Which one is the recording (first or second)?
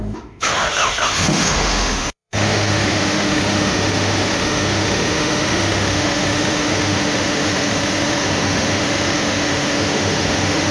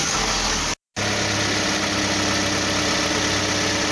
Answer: second